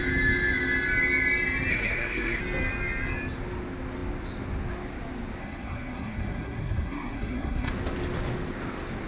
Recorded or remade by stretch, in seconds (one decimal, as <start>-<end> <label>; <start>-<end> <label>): 0.0-1.7 recorded; 1.7-2.4 remade; 2.4-5.4 recorded; 5.4-7.7 remade; 7.7-9.1 recorded